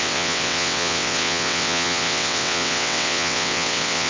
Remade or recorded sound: remade